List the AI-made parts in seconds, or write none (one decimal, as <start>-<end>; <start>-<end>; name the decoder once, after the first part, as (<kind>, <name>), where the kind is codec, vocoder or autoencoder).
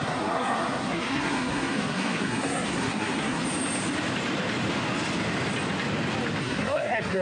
0.0-3.4 (codec, SNAC); 6.4-7.2